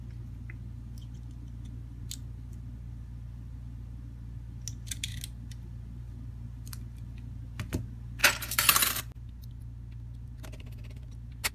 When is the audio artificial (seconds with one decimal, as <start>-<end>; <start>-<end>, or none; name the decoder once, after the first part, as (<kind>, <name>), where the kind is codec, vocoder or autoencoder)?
8.2-9.0 (vocoder, BigVGAN v2)